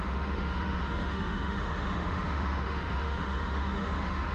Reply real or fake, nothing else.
fake